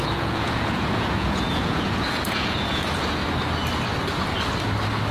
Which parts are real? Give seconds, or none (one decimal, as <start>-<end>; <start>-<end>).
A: 3.2-5.1